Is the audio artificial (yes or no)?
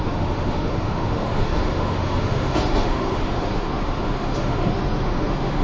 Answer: yes